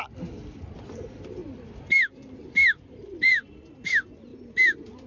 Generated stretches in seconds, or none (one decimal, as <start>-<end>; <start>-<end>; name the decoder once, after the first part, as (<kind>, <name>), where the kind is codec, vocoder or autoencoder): 1.4-3.7 (vocoder, BigVGAN v2); 4.3-5.1